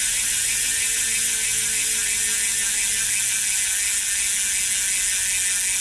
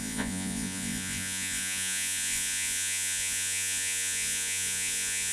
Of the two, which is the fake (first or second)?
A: second